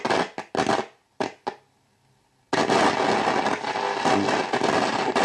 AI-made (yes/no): no